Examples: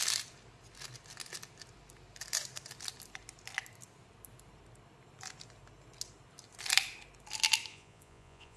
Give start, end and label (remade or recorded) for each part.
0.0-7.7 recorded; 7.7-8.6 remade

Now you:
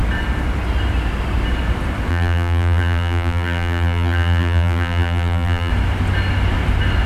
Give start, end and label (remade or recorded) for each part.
0.0-2.1 recorded; 2.1-5.7 remade; 5.7-7.1 recorded

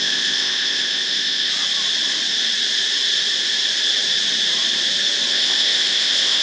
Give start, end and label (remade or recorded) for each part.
0.0-1.5 remade; 1.5-5.3 recorded; 5.3-6.4 remade

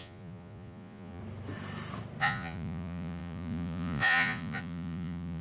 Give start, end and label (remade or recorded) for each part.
0.0-1.2 remade; 1.2-2.2 recorded; 2.2-5.4 remade

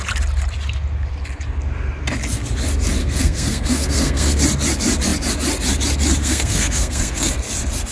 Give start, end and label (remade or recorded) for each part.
0.0-3.0 recorded; 3.0-4.4 remade; 4.4-6.2 recorded; 6.2-7.3 remade; 7.3-7.9 recorded

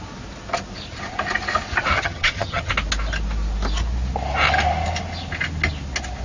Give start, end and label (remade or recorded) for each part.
0.0-1.9 recorded; 1.9-2.7 remade; 2.7-6.2 recorded

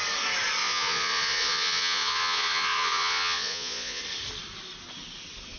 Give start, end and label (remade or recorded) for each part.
0.0-0.6 recorded; 0.6-4.0 remade; 4.0-5.6 recorded